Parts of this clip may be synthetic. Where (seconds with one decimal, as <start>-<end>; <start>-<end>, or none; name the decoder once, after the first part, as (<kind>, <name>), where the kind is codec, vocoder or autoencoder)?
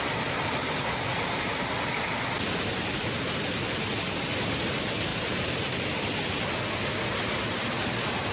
5.1-6.6 (vocoder, BigVGAN v2)